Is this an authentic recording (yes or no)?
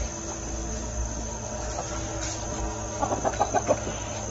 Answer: yes